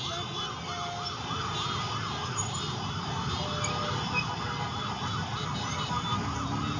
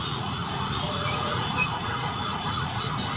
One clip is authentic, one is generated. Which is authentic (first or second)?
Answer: first